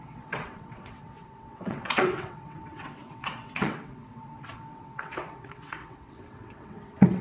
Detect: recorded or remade remade